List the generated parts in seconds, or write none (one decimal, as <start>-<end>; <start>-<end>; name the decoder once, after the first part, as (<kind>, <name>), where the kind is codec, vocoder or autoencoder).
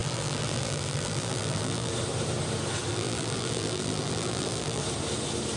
0.0-1.9 (vocoder, BigVGAN v2); 2.9-4.8